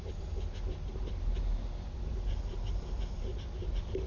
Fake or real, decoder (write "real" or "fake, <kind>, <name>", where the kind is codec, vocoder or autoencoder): real